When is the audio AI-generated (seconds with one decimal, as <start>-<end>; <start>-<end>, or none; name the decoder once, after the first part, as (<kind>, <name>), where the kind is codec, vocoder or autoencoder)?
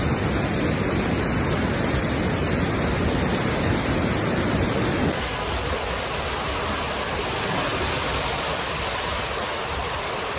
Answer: none